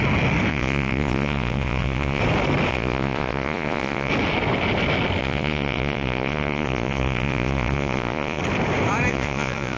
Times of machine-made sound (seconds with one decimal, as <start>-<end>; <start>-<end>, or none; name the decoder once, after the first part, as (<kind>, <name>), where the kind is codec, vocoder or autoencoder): 0.5-2.2 (vocoder, Vocos); 2.7-4.1; 5.2-8.4; 9.1-9.8